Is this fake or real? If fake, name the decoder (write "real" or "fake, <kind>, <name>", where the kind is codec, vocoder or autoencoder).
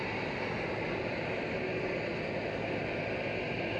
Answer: real